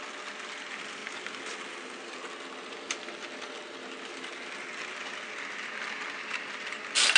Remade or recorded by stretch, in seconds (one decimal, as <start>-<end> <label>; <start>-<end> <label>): 0.0-7.2 recorded